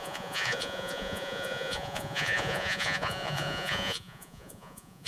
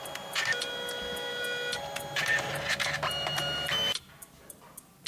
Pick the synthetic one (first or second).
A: first